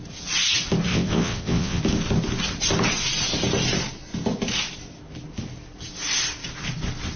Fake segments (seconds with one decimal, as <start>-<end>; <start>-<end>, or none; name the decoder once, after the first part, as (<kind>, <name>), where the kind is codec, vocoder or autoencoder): 0.9-1.8 (vocoder, WaveNeXt)